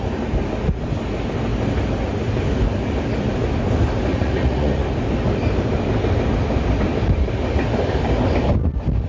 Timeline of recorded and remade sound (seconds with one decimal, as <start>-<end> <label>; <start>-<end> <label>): 0.0-4.1 recorded; 4.1-4.8 remade; 4.8-9.1 recorded

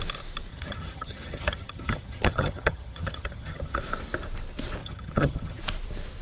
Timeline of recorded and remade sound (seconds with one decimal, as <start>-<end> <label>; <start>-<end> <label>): 0.0-0.5 recorded; 0.5-3.8 remade; 3.8-4.8 recorded; 4.8-5.6 remade; 5.6-6.2 recorded

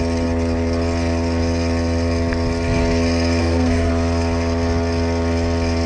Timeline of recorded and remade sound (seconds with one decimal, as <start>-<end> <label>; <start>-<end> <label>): 0.0-3.4 recorded; 3.4-3.9 remade; 3.9-5.9 recorded

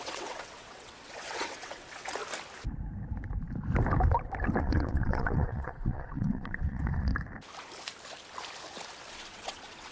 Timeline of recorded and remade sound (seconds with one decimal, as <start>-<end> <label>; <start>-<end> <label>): 0.0-2.2 remade; 2.2-4.6 recorded; 4.6-7.1 remade; 7.1-9.1 recorded; 9.1-9.9 remade

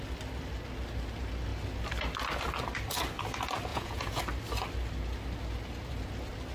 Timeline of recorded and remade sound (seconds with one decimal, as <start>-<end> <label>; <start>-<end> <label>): 0.0-3.7 recorded; 3.7-4.2 remade; 4.2-6.5 recorded

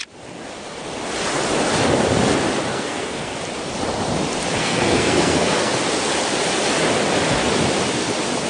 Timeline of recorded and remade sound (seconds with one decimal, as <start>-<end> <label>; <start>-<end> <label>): 0.0-2.7 recorded; 2.7-3.4 remade; 3.4-4.6 recorded; 4.6-5.7 remade; 5.7-8.5 recorded

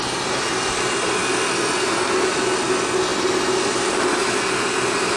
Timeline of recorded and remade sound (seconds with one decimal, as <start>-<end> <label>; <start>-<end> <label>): 0.0-5.2 recorded